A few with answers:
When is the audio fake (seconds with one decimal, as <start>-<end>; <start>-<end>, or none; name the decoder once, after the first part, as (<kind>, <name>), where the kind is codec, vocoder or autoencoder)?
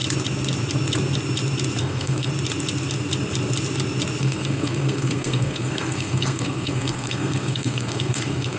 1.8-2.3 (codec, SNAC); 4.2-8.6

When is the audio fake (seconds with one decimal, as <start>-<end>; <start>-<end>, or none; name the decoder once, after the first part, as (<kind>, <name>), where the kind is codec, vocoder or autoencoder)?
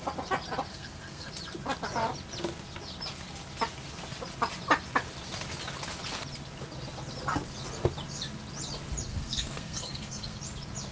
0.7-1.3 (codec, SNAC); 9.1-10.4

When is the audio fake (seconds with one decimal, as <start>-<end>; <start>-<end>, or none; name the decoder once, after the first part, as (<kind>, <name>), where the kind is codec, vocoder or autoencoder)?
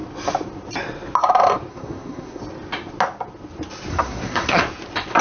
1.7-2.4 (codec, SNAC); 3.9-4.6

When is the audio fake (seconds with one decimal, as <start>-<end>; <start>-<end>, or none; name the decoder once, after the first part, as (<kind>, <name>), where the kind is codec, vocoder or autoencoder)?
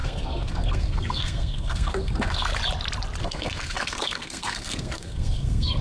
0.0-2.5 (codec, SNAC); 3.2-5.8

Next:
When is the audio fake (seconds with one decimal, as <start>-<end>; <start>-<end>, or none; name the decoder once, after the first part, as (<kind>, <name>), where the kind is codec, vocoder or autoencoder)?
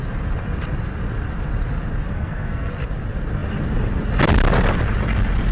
2.1-2.7 (codec, SNAC)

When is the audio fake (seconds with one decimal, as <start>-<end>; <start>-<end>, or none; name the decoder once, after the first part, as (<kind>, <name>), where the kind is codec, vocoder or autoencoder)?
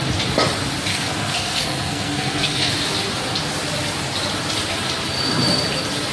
0.9-2.7 (codec, SNAC)